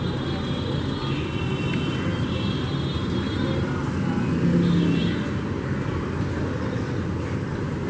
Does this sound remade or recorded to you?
recorded